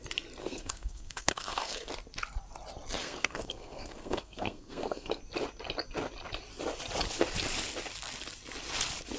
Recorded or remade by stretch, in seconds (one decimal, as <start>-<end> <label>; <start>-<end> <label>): 0.0-0.4 recorded; 0.4-1.9 remade; 1.9-3.0 recorded; 3.0-5.2 remade; 5.2-9.2 recorded